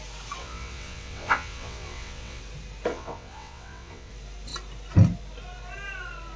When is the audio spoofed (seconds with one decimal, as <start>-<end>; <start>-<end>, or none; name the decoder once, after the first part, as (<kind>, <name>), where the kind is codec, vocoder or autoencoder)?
0.4-2.4 (vocoder, WaveNeXt); 2.9-4.1